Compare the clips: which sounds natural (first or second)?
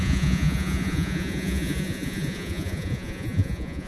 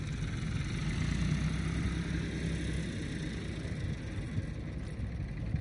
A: second